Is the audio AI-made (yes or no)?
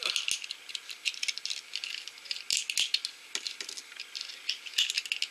no